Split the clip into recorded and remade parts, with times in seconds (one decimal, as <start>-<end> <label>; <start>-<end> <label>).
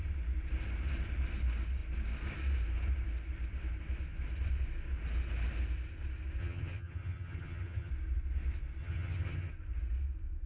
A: 0.0-6.4 recorded; 6.4-7.9 remade; 7.9-8.8 recorded; 8.8-9.5 remade; 9.5-10.5 recorded